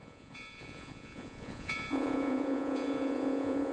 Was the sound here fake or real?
fake